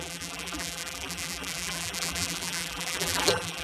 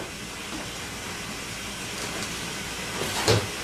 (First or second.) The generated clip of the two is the first